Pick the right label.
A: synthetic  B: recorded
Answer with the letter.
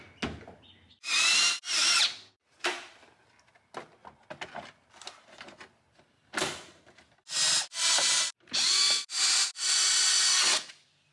B